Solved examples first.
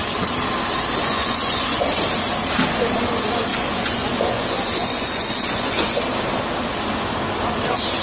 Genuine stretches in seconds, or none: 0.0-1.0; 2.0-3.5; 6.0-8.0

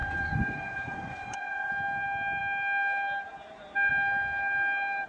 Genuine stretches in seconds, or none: 1.7-5.1

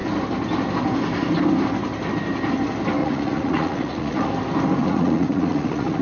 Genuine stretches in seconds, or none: 0.0-3.0; 4.3-4.8